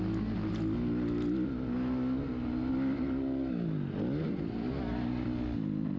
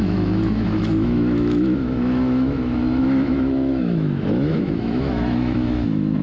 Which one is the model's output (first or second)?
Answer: second